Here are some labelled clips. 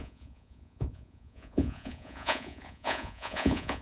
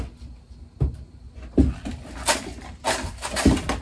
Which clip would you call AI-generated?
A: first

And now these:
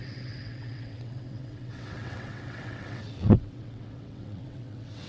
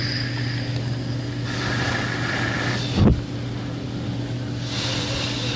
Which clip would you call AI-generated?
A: first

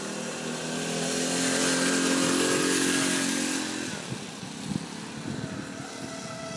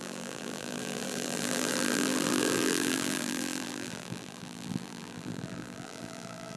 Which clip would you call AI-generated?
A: second